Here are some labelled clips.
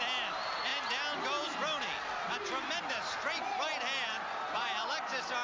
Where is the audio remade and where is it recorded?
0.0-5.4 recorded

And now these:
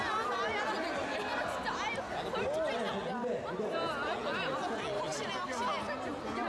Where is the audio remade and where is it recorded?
0.0-6.5 recorded

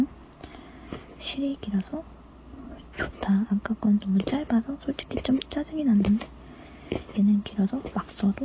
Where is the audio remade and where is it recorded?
0.0-8.4 recorded

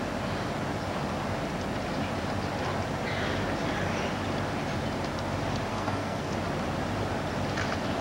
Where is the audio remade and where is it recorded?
0.0-5.7 recorded; 5.7-6.3 remade; 6.3-8.0 recorded

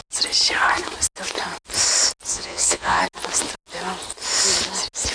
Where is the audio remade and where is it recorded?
0.0-2.3 recorded; 2.3-3.0 remade; 3.0-5.1 recorded

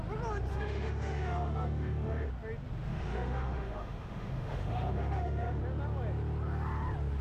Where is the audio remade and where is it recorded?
0.0-0.5 recorded; 0.5-2.3 remade; 2.3-2.9 recorded; 2.9-5.6 remade; 5.6-7.2 recorded

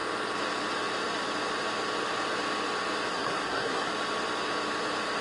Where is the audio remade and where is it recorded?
0.0-3.1 recorded; 3.1-3.9 remade; 3.9-5.2 recorded